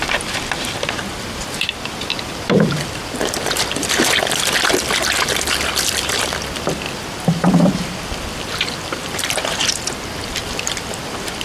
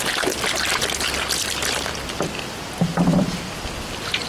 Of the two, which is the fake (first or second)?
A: first